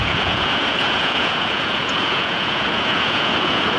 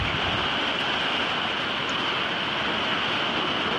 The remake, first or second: first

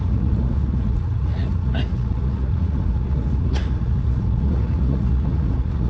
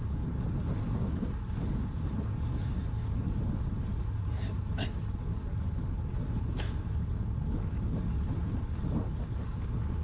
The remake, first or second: first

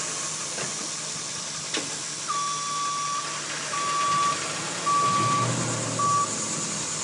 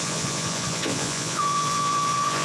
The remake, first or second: second